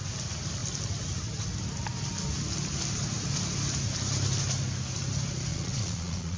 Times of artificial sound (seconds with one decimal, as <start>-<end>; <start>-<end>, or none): 5.5-6.4